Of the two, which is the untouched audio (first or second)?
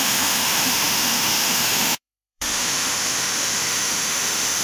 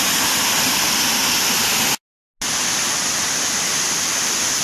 second